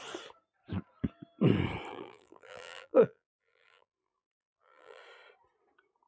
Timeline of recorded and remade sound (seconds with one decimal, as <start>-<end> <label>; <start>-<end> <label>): 0.0-1.9 recorded; 1.9-5.0 remade; 5.0-6.1 recorded

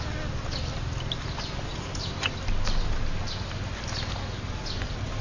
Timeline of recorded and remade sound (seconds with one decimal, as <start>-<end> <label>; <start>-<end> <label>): 0.0-5.2 recorded

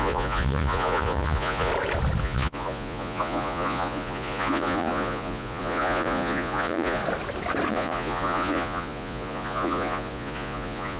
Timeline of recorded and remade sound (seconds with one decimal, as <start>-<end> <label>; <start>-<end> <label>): 0.0-1.7 remade; 1.7-2.2 recorded; 2.2-7.0 remade; 7.0-7.7 recorded; 7.7-11.0 remade

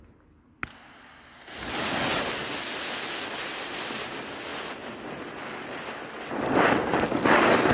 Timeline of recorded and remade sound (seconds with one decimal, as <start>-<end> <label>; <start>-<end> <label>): 0.0-7.7 recorded

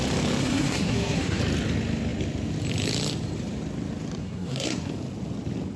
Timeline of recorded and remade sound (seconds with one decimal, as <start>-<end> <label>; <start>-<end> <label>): 0.0-0.4 recorded; 0.4-1.4 remade; 1.4-4.2 recorded; 4.2-4.9 remade; 4.9-5.8 recorded